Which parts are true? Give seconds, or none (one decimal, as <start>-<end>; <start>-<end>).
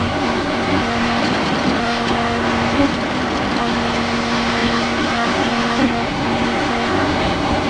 1.2-1.8; 2.9-3.6